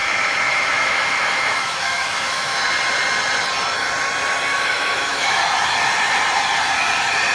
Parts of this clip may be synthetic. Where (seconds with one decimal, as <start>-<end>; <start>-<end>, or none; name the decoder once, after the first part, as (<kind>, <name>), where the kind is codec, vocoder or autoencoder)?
0.0-2.7 (autoencoder, DAC-VAE); 4.5-5.4